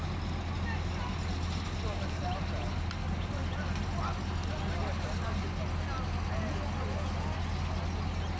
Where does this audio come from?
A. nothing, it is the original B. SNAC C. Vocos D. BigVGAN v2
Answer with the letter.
A